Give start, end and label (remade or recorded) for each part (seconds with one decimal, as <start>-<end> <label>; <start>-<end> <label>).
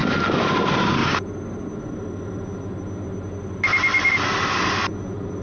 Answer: 0.0-1.0 remade; 1.0-4.1 recorded; 4.1-5.4 remade